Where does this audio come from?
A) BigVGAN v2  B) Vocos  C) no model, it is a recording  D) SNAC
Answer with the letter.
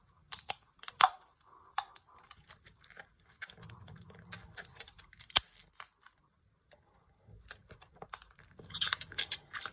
A